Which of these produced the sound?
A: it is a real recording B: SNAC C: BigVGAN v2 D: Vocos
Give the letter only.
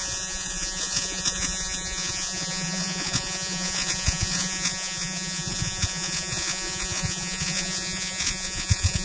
D